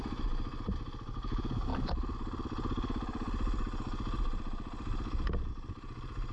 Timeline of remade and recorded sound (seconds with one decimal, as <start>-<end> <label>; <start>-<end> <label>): 0.0-6.3 recorded